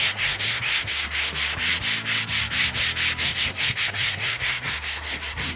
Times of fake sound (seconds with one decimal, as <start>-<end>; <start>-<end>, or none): 0.0-1.3; 3.2-5.6

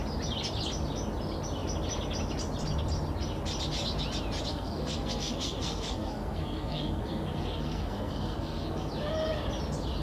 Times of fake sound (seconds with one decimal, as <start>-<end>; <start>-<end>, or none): 4.5-8.9

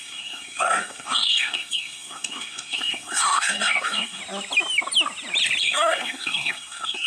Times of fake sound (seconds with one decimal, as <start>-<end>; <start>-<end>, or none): 0.0-4.2; 5.6-7.1

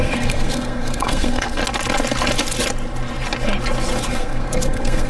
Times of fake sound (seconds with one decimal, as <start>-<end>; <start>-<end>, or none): 0.0-1.6; 4.1-5.1

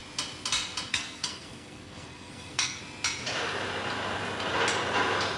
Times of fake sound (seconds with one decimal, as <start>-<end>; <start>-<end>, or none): 0.9-2.8

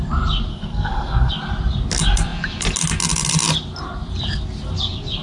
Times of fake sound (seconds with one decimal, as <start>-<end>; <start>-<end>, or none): 0.5-1.3

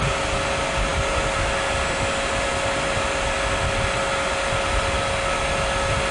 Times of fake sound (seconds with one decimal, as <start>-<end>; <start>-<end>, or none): none

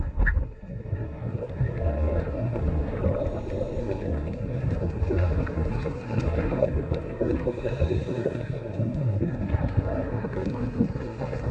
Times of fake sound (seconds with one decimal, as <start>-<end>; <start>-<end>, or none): 0.0-3.0; 3.8-11.5